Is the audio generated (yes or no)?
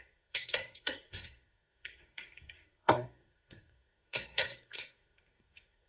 yes